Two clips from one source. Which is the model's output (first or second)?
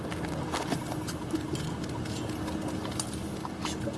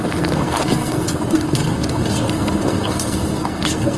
second